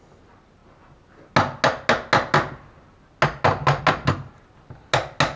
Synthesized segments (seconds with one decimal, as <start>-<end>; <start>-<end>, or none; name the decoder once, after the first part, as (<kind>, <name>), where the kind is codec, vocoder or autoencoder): none